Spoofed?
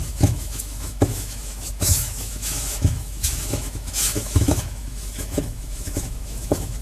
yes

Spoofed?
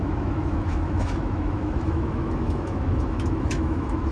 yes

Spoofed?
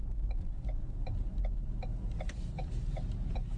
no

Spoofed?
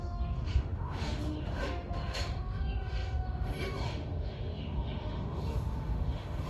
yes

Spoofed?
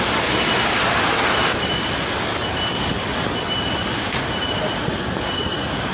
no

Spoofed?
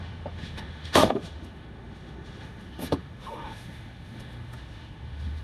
yes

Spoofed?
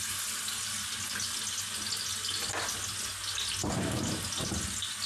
no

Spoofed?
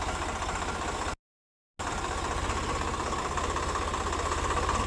no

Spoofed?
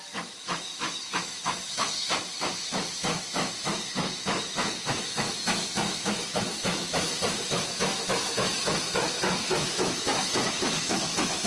yes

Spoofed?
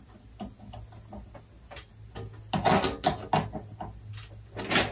no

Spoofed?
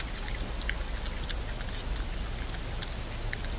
no